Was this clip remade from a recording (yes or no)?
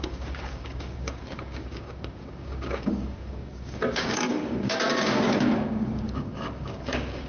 yes